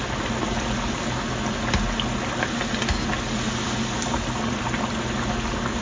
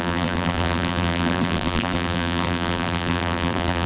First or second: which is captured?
first